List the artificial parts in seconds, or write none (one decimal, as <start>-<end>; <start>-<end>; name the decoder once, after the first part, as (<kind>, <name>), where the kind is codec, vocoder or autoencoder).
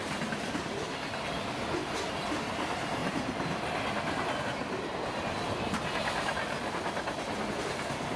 none